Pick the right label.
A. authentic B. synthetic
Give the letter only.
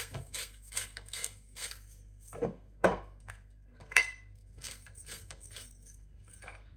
B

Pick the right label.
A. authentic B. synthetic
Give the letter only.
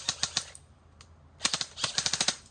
A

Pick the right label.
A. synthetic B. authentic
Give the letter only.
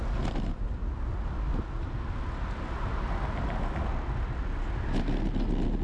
B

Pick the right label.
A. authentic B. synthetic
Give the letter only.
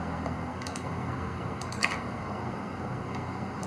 B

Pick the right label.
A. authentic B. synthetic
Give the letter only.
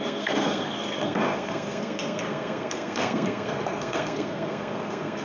B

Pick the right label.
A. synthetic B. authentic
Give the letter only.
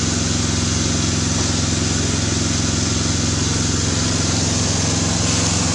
B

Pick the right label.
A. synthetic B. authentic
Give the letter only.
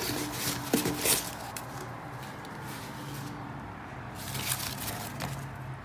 B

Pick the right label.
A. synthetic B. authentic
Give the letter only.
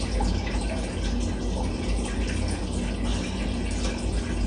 B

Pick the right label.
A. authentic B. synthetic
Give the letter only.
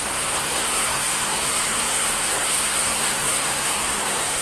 B